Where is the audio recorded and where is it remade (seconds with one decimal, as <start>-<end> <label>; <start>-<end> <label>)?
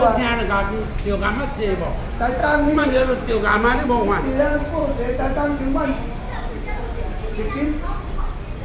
0.0-2.4 recorded; 2.4-3.0 remade; 3.0-8.6 recorded